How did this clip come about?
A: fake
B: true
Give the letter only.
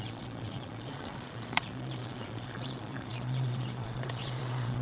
A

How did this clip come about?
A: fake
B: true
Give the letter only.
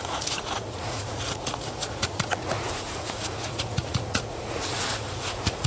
A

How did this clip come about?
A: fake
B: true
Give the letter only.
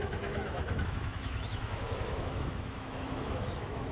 A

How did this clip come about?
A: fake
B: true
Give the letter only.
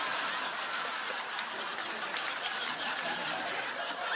B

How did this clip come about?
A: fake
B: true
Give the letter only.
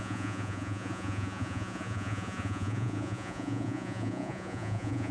A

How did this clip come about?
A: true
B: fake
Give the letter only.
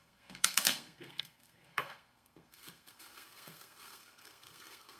B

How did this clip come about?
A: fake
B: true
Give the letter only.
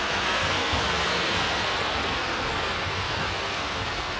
A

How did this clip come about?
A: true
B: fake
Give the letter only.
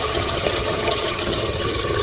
B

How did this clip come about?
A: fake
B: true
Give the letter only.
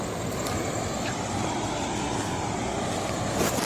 B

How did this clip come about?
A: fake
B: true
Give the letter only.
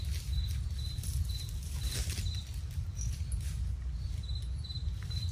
B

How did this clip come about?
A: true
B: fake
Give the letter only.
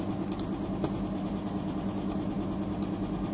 A